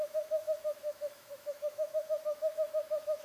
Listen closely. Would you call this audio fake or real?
fake